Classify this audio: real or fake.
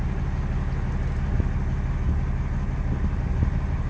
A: real